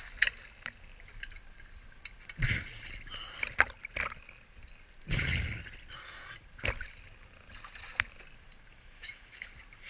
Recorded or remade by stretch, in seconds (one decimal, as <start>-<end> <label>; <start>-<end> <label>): 0.0-8.7 recorded; 8.7-9.5 remade; 9.5-9.9 recorded